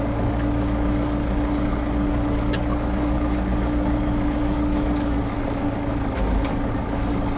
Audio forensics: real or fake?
fake